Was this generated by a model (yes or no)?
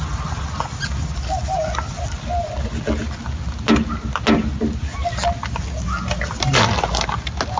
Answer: no